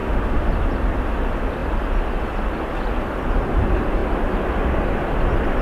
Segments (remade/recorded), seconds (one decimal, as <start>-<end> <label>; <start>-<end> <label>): 0.0-0.5 remade; 0.5-5.6 recorded